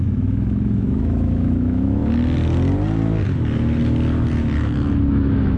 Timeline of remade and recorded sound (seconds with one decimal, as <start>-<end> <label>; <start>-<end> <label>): 0.0-2.0 remade; 2.0-5.1 recorded; 5.1-5.6 remade

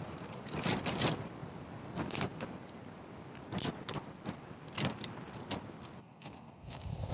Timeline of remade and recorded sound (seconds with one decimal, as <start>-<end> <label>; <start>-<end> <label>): 0.0-6.0 recorded; 6.0-7.1 remade

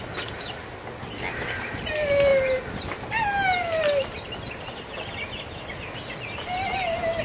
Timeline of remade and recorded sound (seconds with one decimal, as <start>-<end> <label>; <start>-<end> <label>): 0.0-7.2 recorded

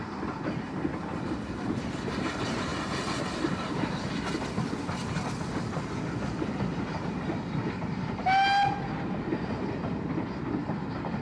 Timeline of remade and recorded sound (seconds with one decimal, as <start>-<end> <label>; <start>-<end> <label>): 0.0-10.6 recorded; 10.6-11.2 remade

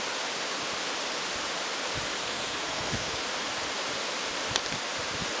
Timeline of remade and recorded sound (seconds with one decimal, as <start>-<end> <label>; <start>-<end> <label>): 0.0-2.2 recorded; 2.2-3.2 remade; 3.2-5.4 recorded

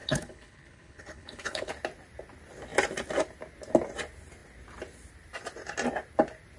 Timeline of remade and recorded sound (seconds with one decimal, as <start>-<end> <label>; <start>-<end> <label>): 0.0-1.7 remade; 1.7-6.6 recorded

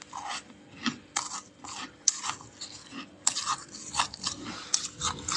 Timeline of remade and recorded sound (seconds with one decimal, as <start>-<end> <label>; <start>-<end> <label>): 0.0-5.4 recorded

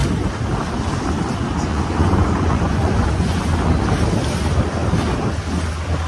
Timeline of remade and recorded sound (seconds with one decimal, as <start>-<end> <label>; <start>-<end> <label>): 0.0-1.7 recorded; 1.7-3.4 remade; 3.4-6.1 recorded